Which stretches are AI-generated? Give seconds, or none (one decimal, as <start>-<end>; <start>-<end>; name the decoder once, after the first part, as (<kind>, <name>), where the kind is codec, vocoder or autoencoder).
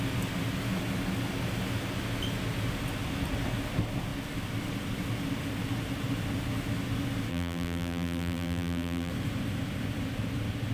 7.3-9.1 (vocoder, BigVGAN v2)